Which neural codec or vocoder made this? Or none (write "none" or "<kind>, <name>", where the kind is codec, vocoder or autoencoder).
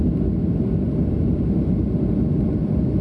none